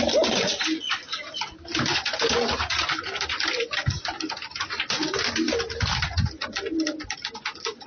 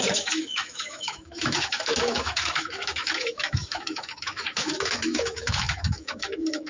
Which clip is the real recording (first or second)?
first